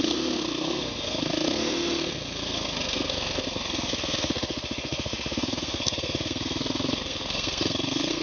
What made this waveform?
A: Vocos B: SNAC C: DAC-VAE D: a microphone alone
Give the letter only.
B